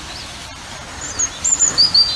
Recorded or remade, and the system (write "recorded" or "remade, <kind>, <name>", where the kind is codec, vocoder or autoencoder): recorded